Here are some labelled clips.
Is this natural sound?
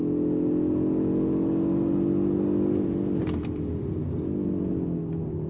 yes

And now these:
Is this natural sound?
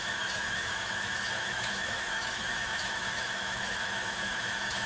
no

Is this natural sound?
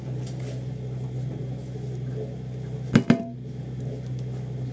yes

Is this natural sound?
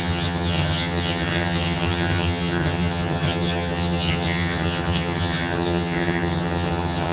no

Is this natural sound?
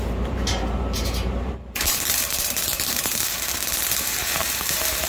no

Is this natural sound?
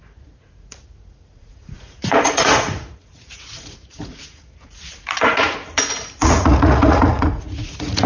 no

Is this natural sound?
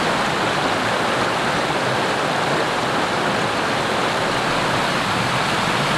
yes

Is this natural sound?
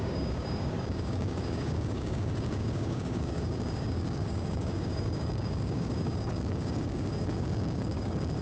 no